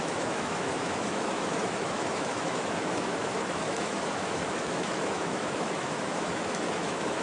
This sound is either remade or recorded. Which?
remade